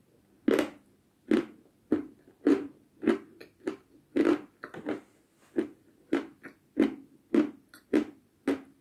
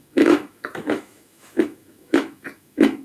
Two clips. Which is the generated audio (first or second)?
second